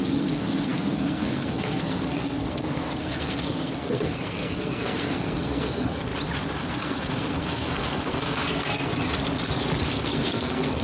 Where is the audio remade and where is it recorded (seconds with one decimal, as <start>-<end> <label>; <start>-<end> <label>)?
0.0-6.1 remade; 6.1-6.7 recorded; 6.7-8.9 remade; 8.9-9.9 recorded; 9.9-10.8 remade